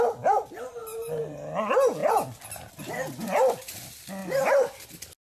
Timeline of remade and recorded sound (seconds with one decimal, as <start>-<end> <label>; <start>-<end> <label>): 0.0-5.3 recorded